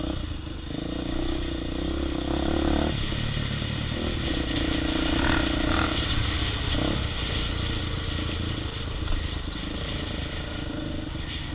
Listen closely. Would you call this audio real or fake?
real